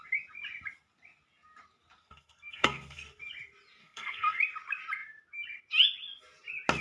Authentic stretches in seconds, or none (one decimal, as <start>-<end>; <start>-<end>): 0.0-2.0; 3.2-3.8; 4.4-6.8